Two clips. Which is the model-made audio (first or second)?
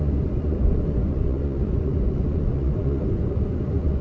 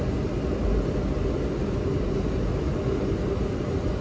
first